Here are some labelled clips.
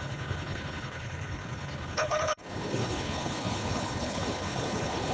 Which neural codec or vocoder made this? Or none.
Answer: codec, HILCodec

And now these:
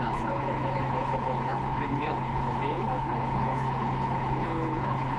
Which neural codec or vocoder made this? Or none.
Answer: codec, HILCodec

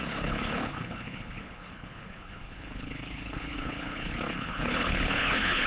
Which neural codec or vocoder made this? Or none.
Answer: codec, HILCodec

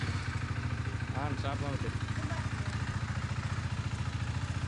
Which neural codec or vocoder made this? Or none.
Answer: none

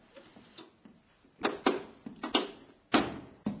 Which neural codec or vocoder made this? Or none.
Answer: none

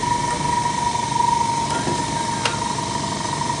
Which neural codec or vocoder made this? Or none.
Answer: none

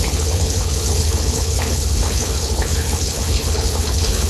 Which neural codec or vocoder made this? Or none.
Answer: codec, HILCodec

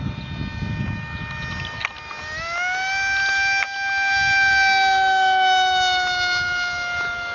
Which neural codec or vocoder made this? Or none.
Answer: none